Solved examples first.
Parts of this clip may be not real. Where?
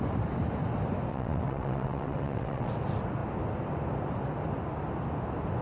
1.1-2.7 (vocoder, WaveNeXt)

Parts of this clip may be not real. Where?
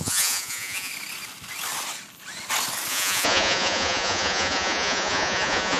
0.0-0.9 (vocoder, Vocos); 2.9-5.8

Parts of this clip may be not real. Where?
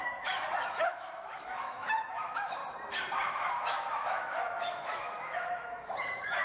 0.0-2.6 (autoencoder, DAC-VAE); 3.3-6.4